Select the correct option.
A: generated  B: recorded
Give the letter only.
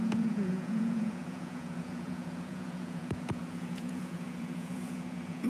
A